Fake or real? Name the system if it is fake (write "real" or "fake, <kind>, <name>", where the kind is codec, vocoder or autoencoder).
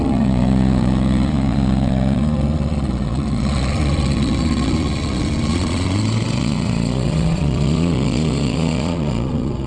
fake, vocoder, Vocos